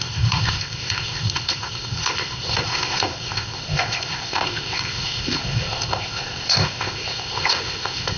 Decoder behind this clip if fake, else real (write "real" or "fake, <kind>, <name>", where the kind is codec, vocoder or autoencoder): fake, codec, ZipCodec